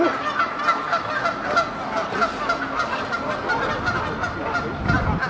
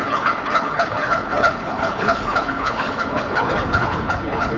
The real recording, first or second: first